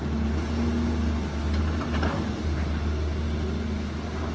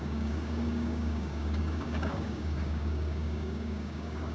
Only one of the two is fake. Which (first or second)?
second